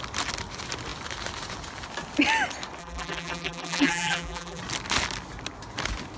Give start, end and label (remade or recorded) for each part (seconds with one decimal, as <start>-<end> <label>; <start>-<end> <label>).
0.0-2.8 recorded; 2.8-4.6 remade; 4.6-6.2 recorded